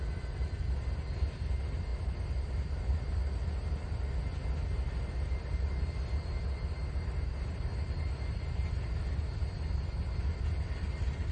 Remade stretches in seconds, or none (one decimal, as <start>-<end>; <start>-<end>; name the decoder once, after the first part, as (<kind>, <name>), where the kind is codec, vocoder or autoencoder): none